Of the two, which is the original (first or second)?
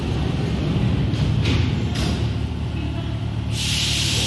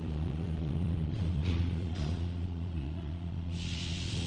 first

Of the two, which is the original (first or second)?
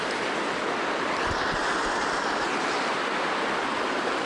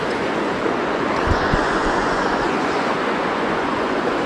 first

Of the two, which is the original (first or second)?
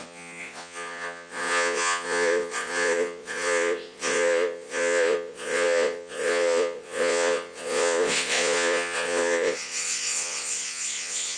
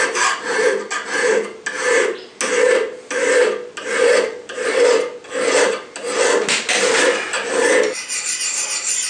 second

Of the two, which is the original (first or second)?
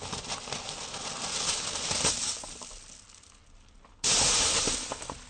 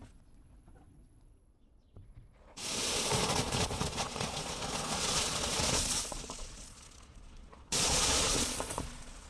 first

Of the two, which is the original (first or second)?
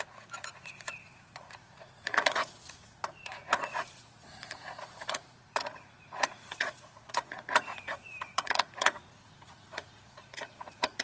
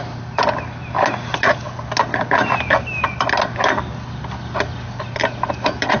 second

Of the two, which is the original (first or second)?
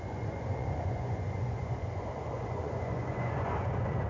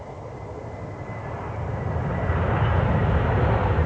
second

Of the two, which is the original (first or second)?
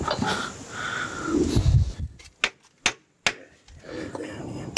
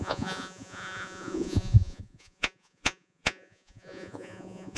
first